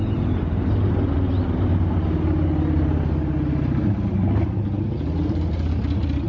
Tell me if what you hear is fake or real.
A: real